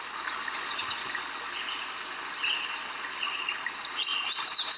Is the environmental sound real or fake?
real